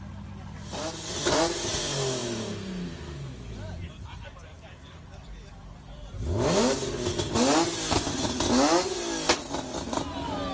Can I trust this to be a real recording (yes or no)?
yes